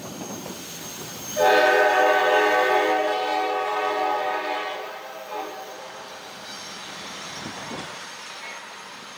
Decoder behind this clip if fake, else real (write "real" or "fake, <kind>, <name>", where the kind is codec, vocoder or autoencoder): fake, vocoder, BigVGAN v2